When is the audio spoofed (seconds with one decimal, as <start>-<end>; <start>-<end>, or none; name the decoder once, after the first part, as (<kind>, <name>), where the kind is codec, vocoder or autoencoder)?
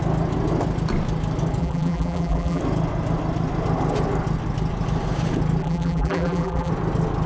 1.6-2.6 (vocoder, BigVGAN v2); 5.6-6.7